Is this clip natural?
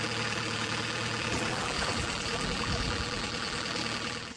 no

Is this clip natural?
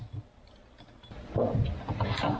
yes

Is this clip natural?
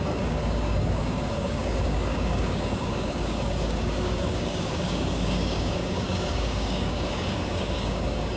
no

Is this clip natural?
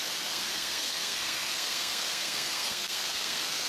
no